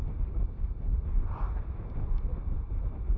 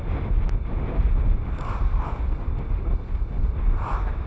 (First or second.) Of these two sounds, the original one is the second